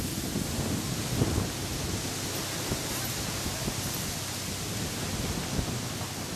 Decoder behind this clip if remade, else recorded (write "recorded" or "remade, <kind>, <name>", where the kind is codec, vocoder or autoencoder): recorded